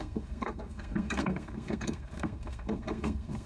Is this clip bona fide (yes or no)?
no